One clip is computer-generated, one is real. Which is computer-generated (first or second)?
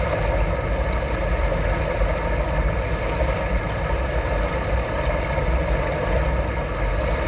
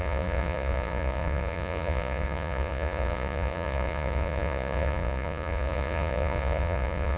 second